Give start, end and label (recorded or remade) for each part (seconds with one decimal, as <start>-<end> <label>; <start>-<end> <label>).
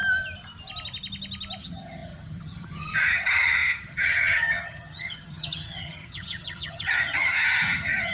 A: 0.0-1.6 recorded; 1.6-8.1 remade